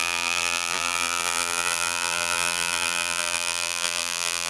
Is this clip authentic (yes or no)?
no